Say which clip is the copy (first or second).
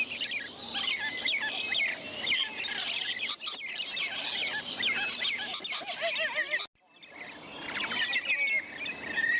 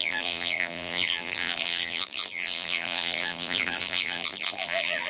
second